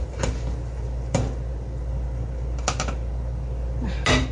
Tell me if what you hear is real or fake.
real